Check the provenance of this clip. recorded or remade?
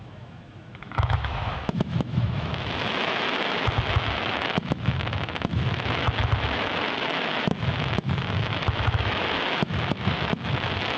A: remade